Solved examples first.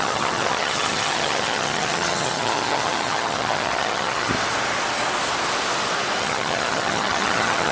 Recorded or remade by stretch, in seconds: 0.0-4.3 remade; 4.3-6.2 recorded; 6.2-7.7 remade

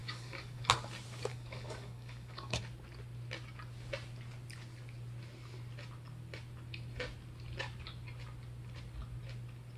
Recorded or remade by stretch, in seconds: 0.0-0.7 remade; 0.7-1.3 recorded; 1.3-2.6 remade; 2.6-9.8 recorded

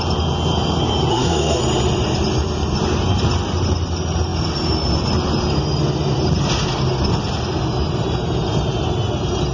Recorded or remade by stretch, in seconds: 0.0-1.1 recorded; 1.1-1.6 remade; 1.6-9.5 recorded